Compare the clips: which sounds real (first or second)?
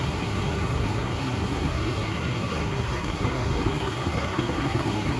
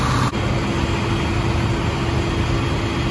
second